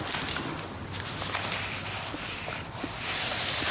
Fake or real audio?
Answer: real